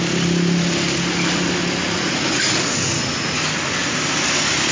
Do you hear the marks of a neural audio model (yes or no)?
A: no